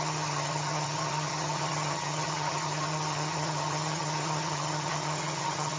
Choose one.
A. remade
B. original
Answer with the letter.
A